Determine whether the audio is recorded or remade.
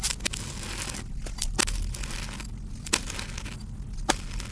recorded